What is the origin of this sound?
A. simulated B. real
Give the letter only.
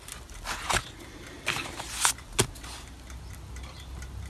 B